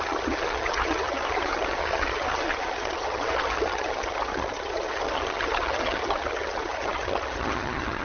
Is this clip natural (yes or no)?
no